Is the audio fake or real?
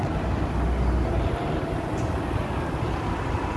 real